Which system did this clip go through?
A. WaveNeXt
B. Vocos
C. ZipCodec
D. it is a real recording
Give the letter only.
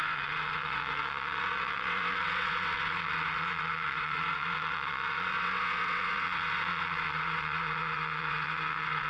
A